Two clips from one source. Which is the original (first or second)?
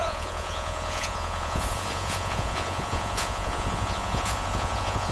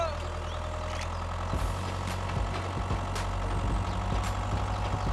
second